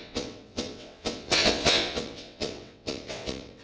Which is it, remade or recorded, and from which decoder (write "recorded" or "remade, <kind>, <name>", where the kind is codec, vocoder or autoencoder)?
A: remade, vocoder, WaveNeXt